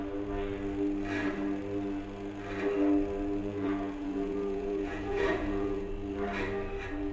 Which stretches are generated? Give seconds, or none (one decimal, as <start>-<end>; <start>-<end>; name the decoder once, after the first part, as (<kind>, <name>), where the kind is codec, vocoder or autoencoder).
3.4-5.9 (vocoder, Vocos)